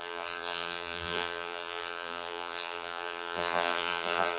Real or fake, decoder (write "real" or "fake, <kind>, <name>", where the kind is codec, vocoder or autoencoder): fake, vocoder, BigVGAN v2